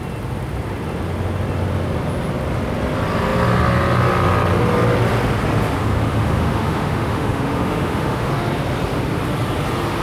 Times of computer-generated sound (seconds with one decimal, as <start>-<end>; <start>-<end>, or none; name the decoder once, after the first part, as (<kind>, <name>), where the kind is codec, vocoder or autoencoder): 5.8-8.3 (autoencoder, DAC-VAE)